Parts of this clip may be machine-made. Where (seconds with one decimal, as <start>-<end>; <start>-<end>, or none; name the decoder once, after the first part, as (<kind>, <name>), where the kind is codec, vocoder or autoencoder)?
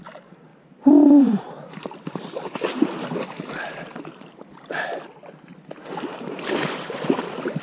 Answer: 0.5-4.9 (vocoder, BigVGAN v2); 6.1-7.6